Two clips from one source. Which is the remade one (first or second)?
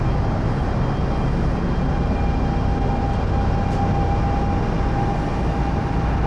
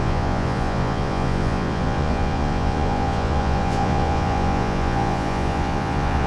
second